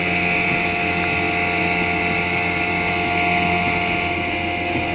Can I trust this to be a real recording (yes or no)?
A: yes